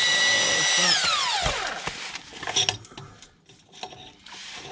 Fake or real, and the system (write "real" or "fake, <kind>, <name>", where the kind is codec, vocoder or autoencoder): real